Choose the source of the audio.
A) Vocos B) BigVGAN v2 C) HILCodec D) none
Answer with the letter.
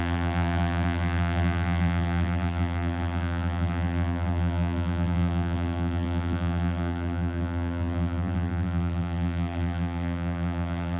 B